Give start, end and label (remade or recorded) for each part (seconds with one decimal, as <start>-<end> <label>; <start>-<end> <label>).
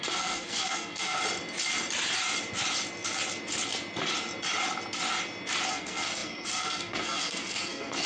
0.0-1.2 remade; 1.2-5.7 recorded; 5.7-8.1 remade